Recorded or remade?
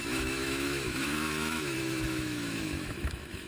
remade